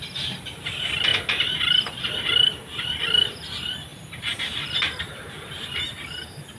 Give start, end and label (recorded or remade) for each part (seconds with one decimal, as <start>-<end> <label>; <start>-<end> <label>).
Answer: 0.0-1.1 recorded; 1.1-1.6 remade; 1.6-6.6 recorded